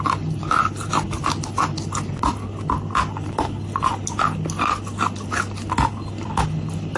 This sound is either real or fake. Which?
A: real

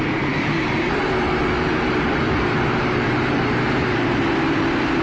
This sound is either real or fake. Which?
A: fake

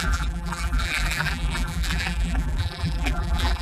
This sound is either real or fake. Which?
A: fake